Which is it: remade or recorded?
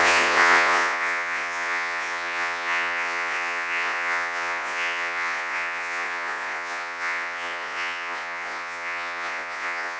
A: remade